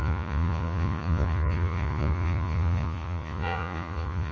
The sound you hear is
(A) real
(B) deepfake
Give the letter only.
B